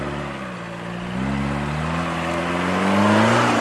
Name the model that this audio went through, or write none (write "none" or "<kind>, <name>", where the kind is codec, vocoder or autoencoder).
none